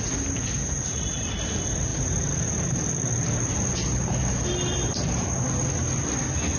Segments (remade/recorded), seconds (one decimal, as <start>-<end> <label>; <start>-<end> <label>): 0.0-6.6 recorded